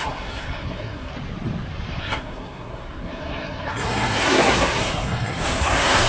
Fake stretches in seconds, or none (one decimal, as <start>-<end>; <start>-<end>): 0.0-1.1; 2.0-6.1